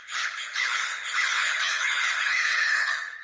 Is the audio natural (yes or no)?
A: no